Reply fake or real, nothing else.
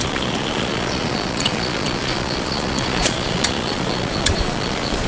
fake